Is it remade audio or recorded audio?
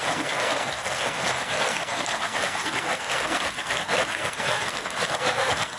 remade